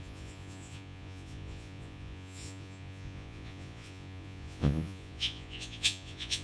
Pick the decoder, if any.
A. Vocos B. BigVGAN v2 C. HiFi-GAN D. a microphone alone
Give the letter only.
A